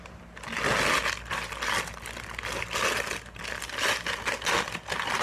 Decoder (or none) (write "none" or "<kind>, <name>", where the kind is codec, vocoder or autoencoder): none